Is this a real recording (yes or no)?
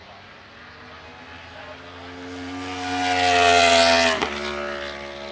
yes